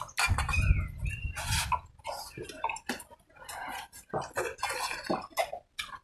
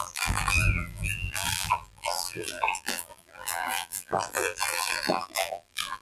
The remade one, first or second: second